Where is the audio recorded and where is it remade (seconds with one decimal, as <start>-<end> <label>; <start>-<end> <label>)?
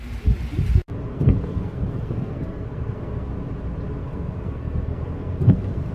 0.0-1.1 recorded; 1.1-3.3 remade; 3.3-4.0 recorded; 4.0-5.9 remade